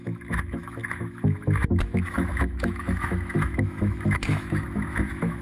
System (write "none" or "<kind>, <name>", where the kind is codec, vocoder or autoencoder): autoencoder, DAC-VAE